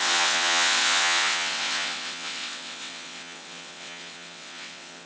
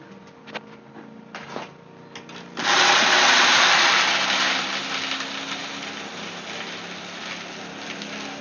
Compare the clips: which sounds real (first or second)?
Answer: second